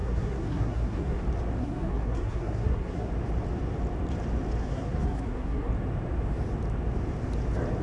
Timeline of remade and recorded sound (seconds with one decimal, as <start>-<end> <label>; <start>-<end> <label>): 0.0-1.2 remade; 1.2-1.6 recorded; 1.6-3.1 remade; 3.1-4.6 recorded; 4.6-5.7 remade; 5.7-7.8 recorded